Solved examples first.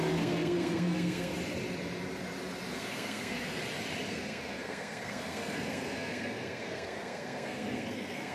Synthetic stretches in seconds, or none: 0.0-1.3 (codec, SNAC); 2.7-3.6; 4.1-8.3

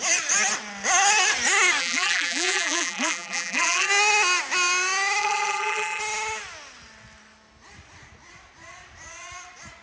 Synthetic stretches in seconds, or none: 1.8-3.9 (vocoder, BigVGAN v2); 5.2-6.0

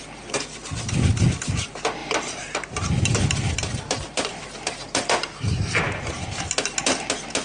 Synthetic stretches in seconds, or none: 2.0-6.4 (vocoder, BigVGAN v2)

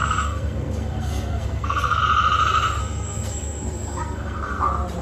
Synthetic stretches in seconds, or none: 0.0-2.0 (codec, SNAC); 2.8-4.6

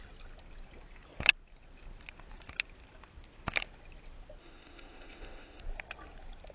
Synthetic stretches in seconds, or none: 4.4-5.6 (autoencoder, DAC-VAE)

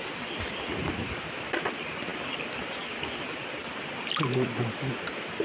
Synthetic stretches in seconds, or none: none

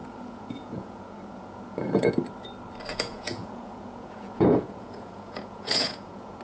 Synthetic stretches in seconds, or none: 0.0-2.1 (vocoder, Vocos); 2.9-6.4

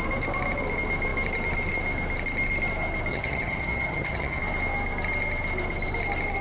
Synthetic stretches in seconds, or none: 3.1-4.4 (vocoder, HiFi-GAN)